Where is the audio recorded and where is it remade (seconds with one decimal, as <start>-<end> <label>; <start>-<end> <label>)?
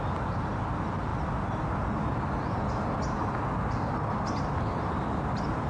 0.0-5.7 recorded